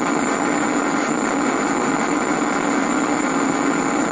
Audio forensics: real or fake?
real